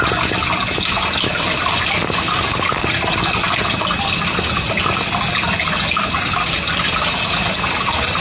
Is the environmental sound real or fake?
real